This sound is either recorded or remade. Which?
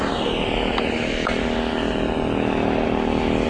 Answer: recorded